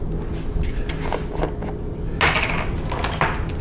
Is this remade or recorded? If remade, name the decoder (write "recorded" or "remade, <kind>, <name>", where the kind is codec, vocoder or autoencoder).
recorded